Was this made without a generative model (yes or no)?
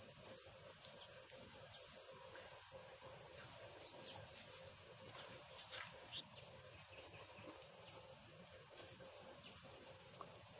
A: yes